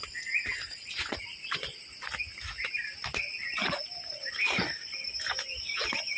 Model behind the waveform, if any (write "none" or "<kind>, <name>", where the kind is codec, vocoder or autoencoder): none